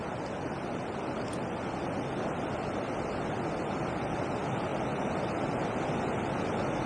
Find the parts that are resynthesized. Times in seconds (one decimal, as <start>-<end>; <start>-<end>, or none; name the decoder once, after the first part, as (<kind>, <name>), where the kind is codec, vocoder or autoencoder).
none